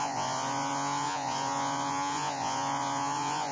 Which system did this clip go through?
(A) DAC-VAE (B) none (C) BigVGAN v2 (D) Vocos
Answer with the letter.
D